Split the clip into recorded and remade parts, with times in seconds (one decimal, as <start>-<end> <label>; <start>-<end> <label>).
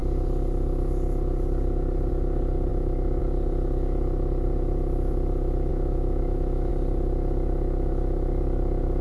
0.0-2.7 recorded; 2.7-3.2 remade; 3.2-5.7 recorded; 5.7-6.7 remade; 6.7-9.0 recorded